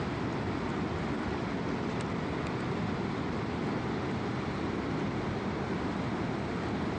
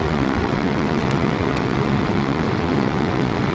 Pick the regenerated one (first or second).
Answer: second